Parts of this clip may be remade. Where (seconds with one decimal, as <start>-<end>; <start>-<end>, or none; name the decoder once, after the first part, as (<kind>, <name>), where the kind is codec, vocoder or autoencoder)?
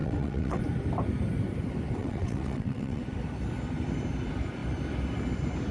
0.0-0.6 (vocoder, WaveNeXt); 2.0-3.0